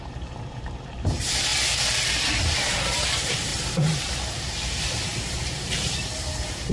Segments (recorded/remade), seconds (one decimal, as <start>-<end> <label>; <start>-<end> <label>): 0.0-1.5 remade; 1.5-2.4 recorded; 2.4-6.7 remade